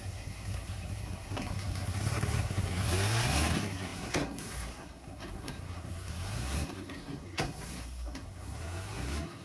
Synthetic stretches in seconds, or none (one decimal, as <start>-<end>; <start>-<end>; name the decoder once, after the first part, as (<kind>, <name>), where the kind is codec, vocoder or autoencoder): 0.0-9.4 (codec, SNAC)